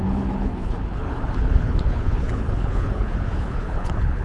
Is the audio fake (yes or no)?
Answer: yes